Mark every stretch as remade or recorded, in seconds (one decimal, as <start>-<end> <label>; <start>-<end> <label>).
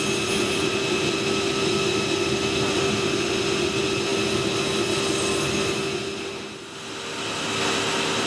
0.0-8.3 recorded